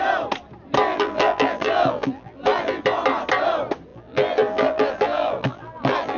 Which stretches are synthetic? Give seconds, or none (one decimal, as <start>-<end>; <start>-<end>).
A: 0.9-2.8; 3.9-6.2